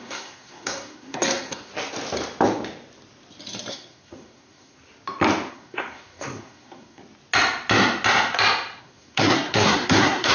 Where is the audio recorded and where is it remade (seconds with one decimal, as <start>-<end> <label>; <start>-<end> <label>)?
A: 0.0-1.7 remade; 1.7-3.7 recorded; 3.7-4.8 remade; 4.8-5.5 recorded; 5.5-7.0 remade; 7.0-8.8 recorded; 8.8-10.3 remade